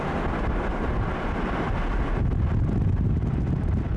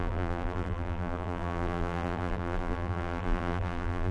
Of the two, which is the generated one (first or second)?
second